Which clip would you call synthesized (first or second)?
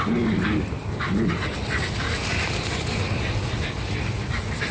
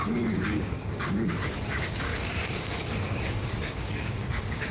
second